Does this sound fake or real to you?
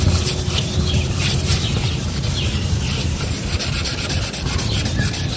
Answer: real